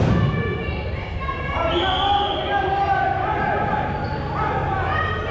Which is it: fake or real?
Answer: real